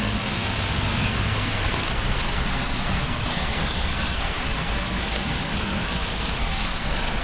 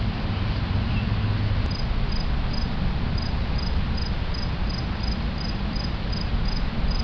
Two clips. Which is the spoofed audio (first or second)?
first